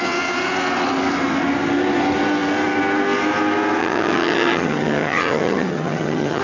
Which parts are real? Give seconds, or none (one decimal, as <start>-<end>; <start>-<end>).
0.0-3.8